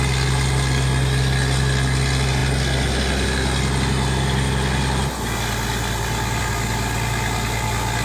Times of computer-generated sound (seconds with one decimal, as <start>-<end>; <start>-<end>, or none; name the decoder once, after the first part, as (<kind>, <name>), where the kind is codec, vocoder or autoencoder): none